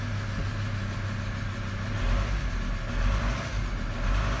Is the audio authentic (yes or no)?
yes